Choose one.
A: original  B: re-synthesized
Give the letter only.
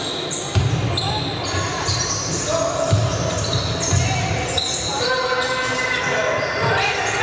A